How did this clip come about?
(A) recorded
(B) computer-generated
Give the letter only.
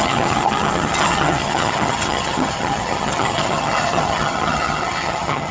B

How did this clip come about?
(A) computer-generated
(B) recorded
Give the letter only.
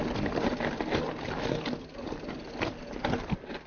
B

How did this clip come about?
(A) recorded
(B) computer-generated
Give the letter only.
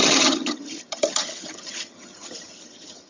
B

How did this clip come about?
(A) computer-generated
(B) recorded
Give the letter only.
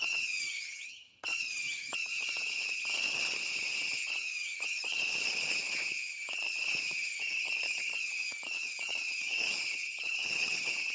A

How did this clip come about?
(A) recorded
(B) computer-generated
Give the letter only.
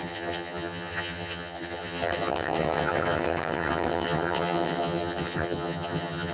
B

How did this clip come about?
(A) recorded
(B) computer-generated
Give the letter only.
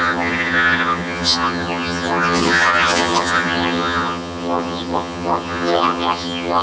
B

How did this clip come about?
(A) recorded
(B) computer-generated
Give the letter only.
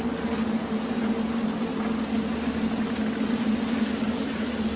A